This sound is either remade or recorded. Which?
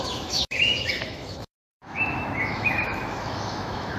remade